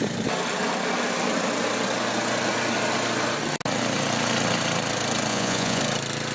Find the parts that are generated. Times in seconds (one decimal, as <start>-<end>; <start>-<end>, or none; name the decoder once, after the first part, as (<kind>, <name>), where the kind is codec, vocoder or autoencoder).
5.3-5.8 (vocoder, Vocos)